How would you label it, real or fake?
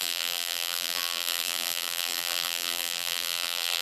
fake